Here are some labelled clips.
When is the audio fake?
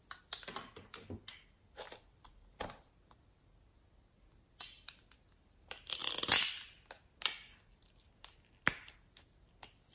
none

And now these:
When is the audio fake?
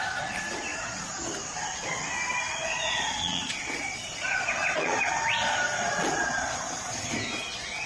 0.7-1.3 (vocoder, Vocos); 2.5-7.1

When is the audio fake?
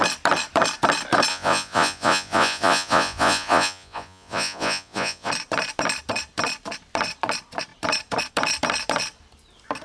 1.3-5.3 (vocoder, Vocos)